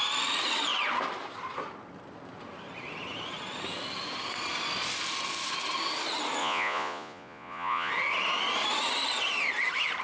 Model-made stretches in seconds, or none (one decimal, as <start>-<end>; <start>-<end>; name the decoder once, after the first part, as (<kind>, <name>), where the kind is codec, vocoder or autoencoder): 6.4-7.9 (vocoder, Vocos)